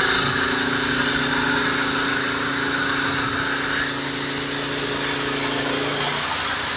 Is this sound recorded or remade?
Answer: recorded